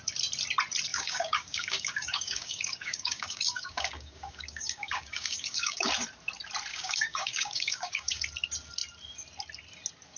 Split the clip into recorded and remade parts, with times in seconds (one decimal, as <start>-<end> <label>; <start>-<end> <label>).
0.0-0.9 recorded; 0.9-5.9 remade; 5.9-6.7 recorded; 6.7-8.2 remade; 8.2-10.2 recorded